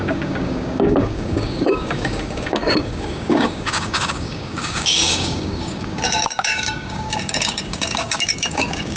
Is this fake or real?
fake